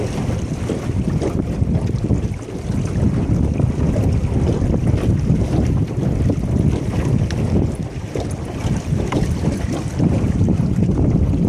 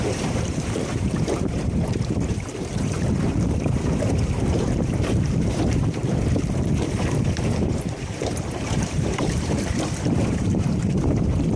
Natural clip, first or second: first